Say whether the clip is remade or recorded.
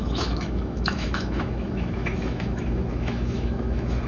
remade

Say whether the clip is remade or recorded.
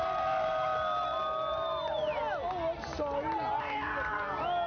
recorded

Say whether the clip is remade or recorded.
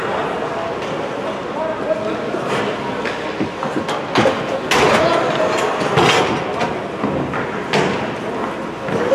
recorded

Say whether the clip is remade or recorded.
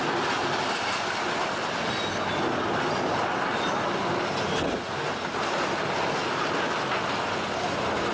recorded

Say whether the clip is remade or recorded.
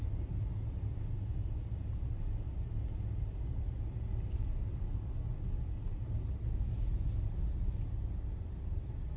recorded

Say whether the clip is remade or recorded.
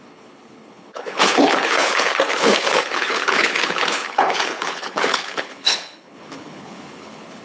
remade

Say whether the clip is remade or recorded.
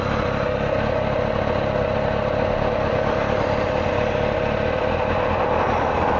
recorded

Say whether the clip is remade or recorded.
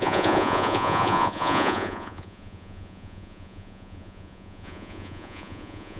remade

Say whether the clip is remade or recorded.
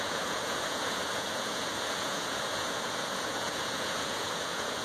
remade